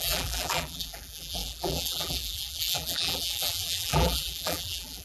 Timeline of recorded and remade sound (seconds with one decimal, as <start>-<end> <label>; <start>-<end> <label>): 0.0-5.0 remade